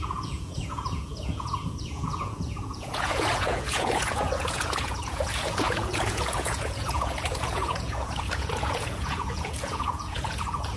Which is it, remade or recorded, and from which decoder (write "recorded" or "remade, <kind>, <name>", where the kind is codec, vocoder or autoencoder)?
remade, vocoder, Vocos